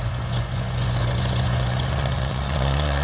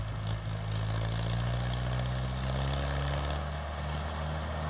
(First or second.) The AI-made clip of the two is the first